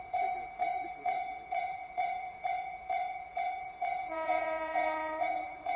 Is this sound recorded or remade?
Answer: remade